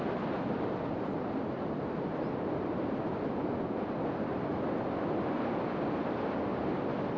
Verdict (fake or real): real